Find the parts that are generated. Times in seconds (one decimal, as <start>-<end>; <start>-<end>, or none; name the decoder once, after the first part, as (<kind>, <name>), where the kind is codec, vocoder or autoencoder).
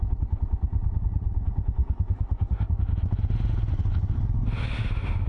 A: none